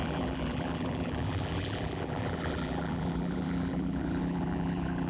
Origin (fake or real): fake